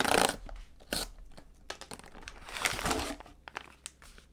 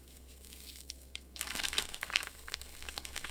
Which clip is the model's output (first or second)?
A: second